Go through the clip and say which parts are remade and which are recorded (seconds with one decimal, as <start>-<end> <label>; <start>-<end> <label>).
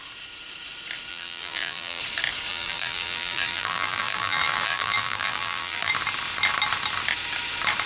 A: 0.0-1.1 recorded; 1.1-2.0 remade; 2.0-2.5 recorded; 2.5-5.9 remade; 5.9-7.9 recorded